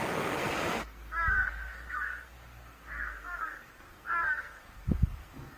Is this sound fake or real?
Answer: fake